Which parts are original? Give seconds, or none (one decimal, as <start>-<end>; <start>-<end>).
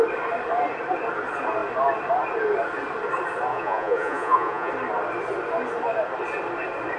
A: 0.0-3.5; 4.7-7.0